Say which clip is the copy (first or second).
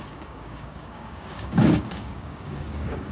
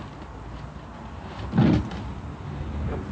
first